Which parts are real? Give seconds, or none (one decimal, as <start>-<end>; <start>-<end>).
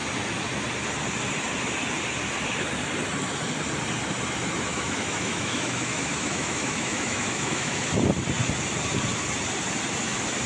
0.0-4.7; 7.9-10.5